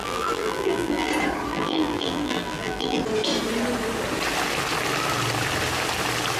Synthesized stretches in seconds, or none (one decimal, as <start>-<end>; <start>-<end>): 0.0-1.1; 1.5-3.0